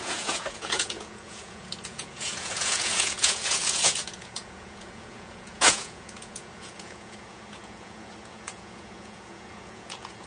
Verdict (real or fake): fake